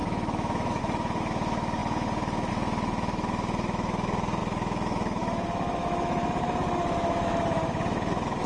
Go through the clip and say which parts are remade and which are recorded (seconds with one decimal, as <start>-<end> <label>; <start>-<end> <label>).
0.0-8.5 remade

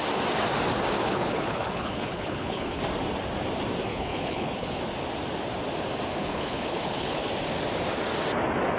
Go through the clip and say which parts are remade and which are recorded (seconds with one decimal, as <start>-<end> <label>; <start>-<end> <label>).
0.0-1.0 recorded; 1.0-2.8 remade; 2.8-3.9 recorded; 3.9-4.8 remade; 4.8-6.2 recorded; 6.2-7.3 remade; 7.3-8.8 recorded

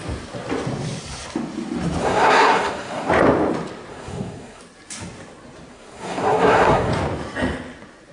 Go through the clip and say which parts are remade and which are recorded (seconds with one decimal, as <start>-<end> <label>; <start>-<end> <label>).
0.0-2.0 recorded; 2.0-3.1 remade; 3.1-3.9 recorded; 3.9-4.6 remade; 4.6-5.7 recorded; 5.7-6.9 remade; 6.9-8.1 recorded